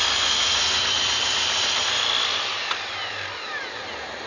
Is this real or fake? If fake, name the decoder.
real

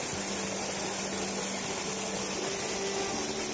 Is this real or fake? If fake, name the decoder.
real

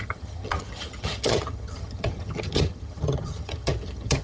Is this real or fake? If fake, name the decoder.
fake, vocoder, HiFi-GAN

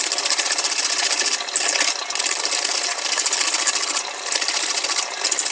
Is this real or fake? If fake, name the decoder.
real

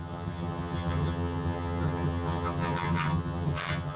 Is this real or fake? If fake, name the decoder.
fake, vocoder, HiFi-GAN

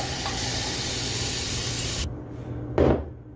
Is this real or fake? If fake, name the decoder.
real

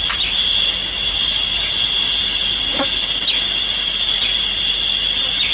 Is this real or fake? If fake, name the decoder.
real